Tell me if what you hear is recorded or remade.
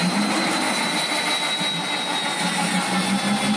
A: recorded